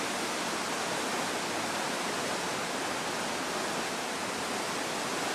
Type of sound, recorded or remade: recorded